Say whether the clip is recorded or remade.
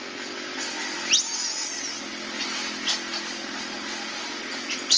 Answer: recorded